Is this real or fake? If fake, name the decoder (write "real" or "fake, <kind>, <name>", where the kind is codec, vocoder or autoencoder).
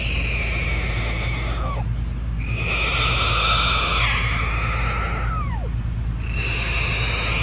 real